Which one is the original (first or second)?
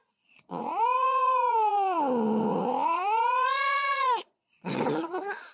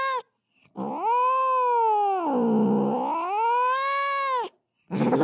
second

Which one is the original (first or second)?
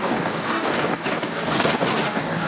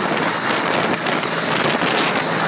second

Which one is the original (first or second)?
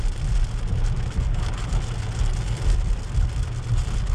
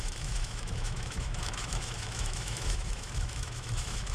first